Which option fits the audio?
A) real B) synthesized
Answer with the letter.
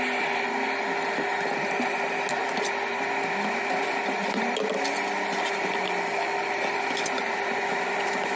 A